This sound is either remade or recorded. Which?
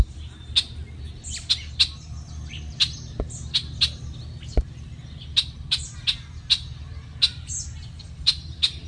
recorded